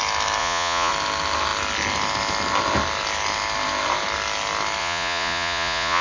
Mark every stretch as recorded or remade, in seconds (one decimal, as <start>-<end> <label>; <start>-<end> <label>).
0.0-0.4 recorded; 0.4-0.9 remade; 0.9-4.8 recorded; 4.8-6.0 remade